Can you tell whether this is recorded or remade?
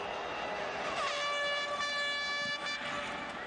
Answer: recorded